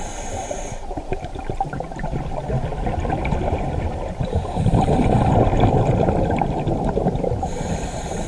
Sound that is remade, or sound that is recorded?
remade